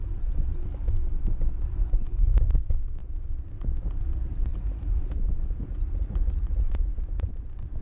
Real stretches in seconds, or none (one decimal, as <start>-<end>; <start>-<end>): 0.0-4.5; 7.3-7.8